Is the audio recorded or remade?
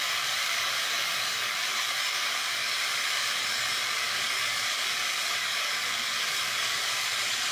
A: remade